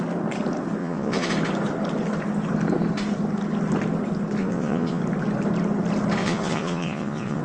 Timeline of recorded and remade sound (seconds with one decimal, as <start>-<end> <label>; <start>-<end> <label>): 0.0-0.8 recorded; 0.8-1.3 remade; 1.3-4.4 recorded; 4.4-5.0 remade; 5.0-6.2 recorded; 6.2-7.4 remade